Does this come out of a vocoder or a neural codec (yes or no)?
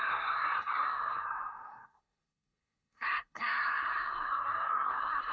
yes